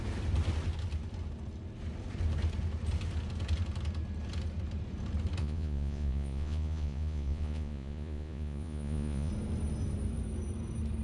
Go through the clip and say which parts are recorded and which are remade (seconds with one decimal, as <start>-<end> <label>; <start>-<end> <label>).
0.0-5.4 recorded; 5.4-9.3 remade; 9.3-11.0 recorded